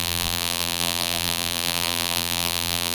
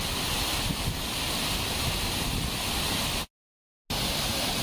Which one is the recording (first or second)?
second